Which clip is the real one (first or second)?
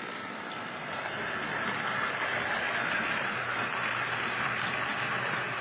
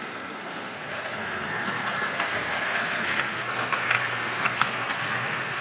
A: first